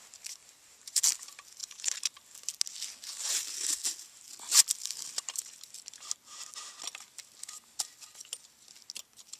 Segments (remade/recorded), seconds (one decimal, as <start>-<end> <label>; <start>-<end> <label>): 0.0-0.4 recorded; 0.4-1.1 remade; 1.1-9.4 recorded